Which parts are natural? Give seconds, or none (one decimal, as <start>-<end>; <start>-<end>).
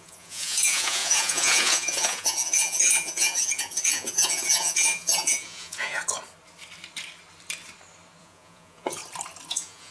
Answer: 6.0-8.2; 9.0-9.5